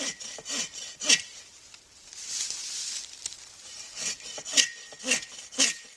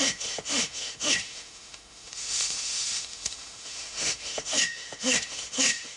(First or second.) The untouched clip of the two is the first